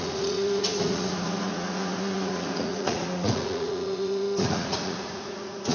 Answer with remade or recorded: remade